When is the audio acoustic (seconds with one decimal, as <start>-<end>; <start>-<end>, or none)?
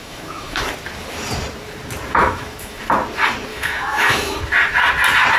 0.6-2.2; 2.8-3.5; 4.4-5.4